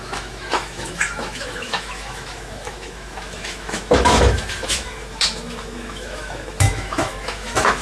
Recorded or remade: remade